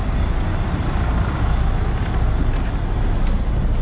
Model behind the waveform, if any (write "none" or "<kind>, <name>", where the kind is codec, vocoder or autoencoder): none